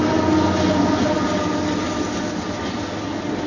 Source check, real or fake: real